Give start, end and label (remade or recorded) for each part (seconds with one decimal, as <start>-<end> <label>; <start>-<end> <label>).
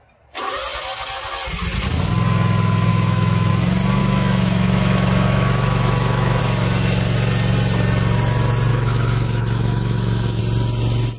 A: 0.0-2.9 recorded; 2.9-3.5 remade; 3.5-4.0 recorded; 4.0-6.4 remade; 6.4-8.7 recorded; 8.7-10.4 remade; 10.4-11.2 recorded